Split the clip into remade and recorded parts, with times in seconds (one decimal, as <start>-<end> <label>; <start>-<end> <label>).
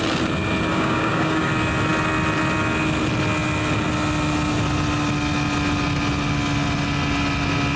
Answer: 0.0-0.7 recorded; 0.7-1.5 remade; 1.5-7.8 recorded